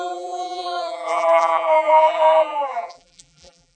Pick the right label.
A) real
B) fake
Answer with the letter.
B